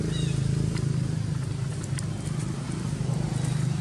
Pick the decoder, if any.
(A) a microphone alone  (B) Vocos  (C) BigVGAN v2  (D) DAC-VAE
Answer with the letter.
A